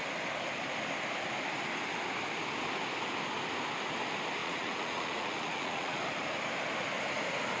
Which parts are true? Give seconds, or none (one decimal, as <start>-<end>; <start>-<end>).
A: 0.0-4.4; 6.0-7.6